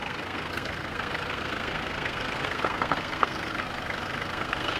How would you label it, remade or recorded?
remade